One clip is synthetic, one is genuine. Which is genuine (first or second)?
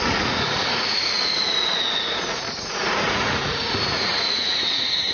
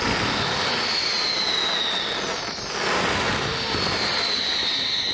second